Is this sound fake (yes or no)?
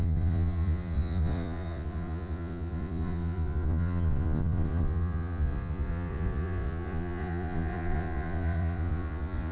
yes